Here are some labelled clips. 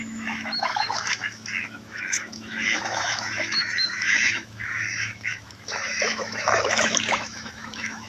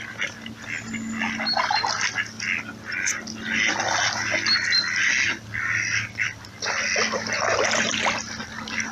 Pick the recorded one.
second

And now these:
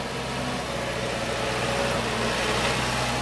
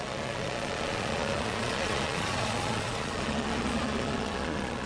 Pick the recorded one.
first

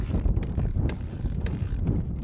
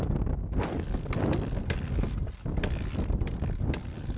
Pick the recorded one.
second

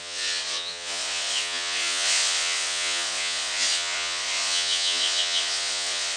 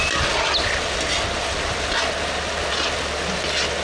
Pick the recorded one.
second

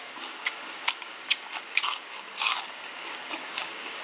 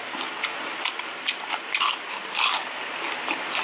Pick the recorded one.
second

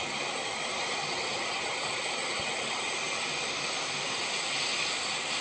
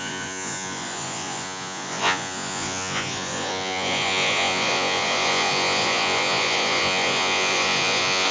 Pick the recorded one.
first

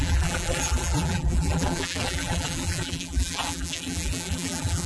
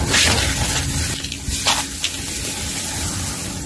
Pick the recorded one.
second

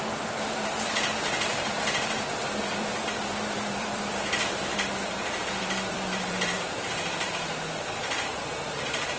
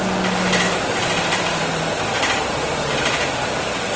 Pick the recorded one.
second